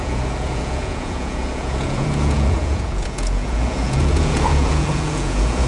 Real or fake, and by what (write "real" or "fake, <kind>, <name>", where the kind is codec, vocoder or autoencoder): fake, vocoder, Vocos